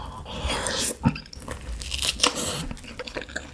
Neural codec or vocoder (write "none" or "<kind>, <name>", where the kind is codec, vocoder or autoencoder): none